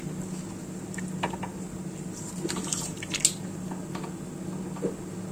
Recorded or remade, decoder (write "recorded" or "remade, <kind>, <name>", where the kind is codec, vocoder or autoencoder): recorded